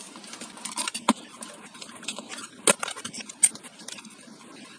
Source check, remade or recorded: recorded